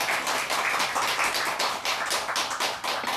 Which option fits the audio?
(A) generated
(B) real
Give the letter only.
B